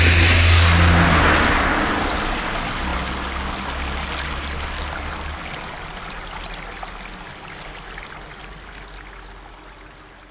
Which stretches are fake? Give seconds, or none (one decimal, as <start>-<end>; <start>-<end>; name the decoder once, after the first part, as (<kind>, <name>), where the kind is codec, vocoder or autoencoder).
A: none